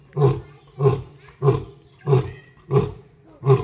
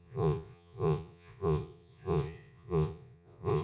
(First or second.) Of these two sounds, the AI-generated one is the second